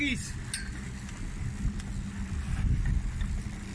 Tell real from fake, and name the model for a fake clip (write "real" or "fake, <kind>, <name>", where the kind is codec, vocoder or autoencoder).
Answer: real